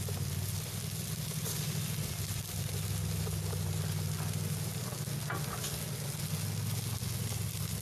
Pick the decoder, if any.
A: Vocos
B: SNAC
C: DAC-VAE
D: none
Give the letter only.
D